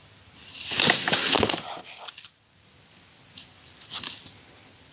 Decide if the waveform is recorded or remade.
recorded